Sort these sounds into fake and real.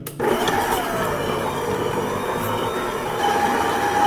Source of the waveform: fake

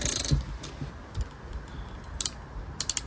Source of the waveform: real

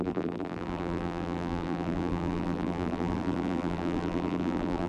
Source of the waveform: fake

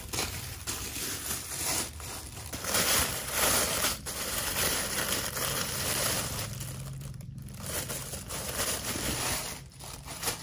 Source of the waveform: fake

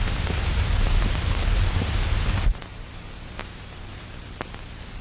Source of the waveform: fake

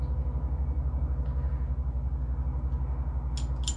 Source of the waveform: real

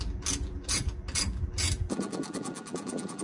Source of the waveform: fake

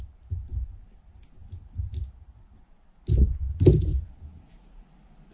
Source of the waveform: real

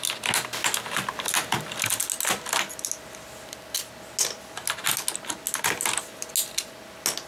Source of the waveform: real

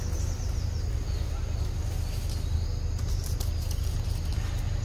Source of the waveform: real